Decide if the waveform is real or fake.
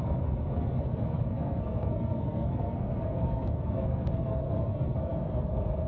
fake